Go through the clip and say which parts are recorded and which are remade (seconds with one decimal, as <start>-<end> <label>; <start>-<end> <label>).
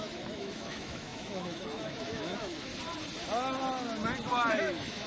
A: 0.0-2.7 remade; 2.7-4.5 recorded; 4.5-5.1 remade